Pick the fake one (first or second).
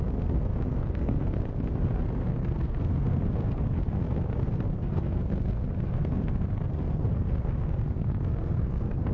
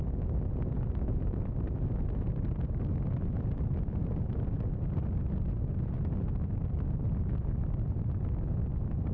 first